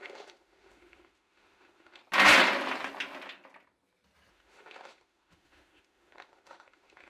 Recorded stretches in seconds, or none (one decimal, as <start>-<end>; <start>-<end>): 2.0-4.3